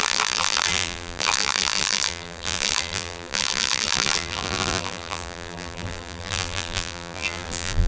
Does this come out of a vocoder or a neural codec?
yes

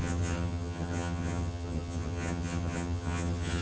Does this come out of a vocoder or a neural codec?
yes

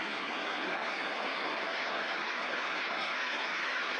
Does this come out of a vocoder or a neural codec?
yes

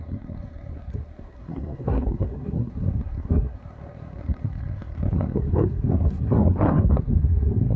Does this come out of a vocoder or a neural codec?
yes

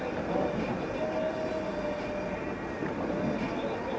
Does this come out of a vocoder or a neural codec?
no